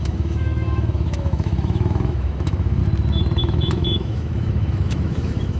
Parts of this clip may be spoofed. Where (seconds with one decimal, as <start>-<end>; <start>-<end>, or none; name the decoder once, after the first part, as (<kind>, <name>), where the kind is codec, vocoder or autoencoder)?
0.0-2.8 (autoencoder, DAC-VAE); 3.4-5.6